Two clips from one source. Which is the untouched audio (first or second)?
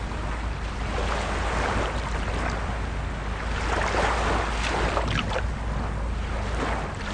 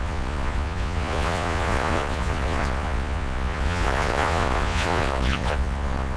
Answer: first